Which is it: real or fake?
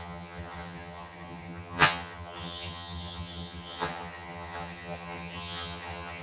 fake